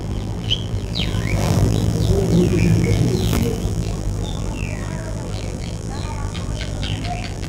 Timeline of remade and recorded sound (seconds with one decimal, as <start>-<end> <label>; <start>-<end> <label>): 0.0-7.5 remade

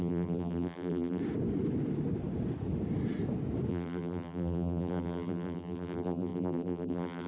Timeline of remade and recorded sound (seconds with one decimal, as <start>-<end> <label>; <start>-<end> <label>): 0.0-1.2 remade; 1.2-3.7 recorded; 3.7-7.3 remade

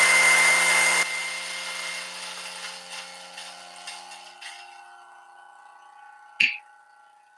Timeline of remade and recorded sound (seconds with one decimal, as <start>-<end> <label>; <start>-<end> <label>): 0.0-7.4 recorded

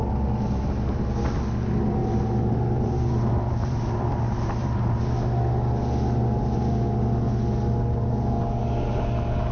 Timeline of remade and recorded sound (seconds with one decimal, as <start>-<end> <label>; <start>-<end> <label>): 0.0-2.0 recorded; 2.0-5.0 remade; 5.0-9.5 recorded

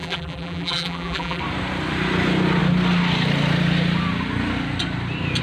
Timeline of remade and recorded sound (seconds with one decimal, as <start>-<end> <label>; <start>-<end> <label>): 0.0-1.4 remade; 1.4-5.4 recorded

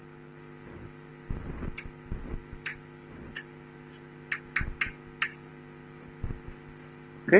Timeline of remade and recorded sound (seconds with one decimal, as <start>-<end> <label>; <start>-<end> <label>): 0.0-7.4 recorded